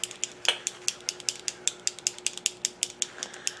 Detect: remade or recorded recorded